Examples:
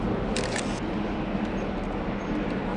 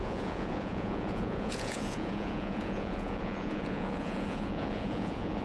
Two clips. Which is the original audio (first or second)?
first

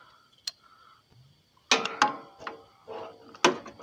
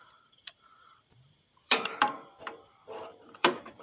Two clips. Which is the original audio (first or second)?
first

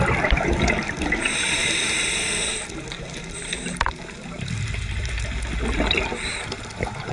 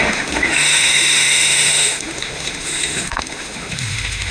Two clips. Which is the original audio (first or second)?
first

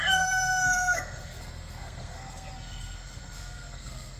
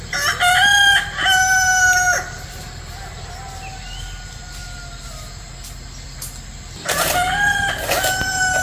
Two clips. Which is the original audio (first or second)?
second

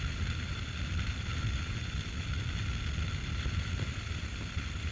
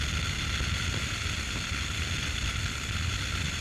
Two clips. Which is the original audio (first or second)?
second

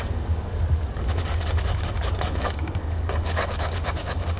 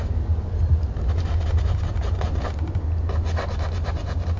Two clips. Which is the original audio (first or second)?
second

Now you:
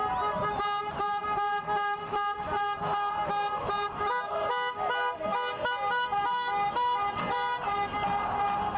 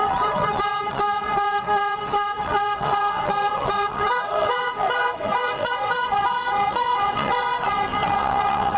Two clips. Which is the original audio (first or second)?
first